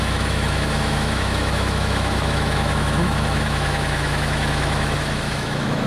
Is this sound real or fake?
fake